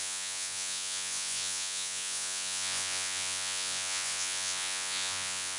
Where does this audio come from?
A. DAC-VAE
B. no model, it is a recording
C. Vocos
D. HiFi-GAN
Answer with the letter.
C